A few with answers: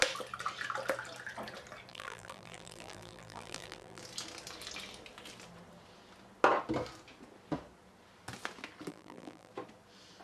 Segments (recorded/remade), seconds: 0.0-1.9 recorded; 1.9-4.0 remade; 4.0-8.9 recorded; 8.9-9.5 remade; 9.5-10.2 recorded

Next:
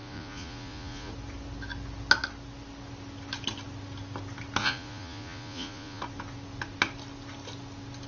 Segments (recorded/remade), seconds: 0.0-1.1 remade; 1.1-4.6 recorded; 4.6-6.0 remade; 6.0-8.1 recorded

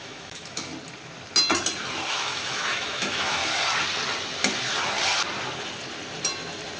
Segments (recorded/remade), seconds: 0.0-0.7 remade; 0.7-2.1 recorded; 2.1-3.4 remade; 3.4-6.8 recorded

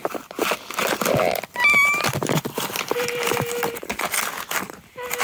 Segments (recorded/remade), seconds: 0.0-0.8 recorded; 0.8-3.9 remade; 3.9-5.2 recorded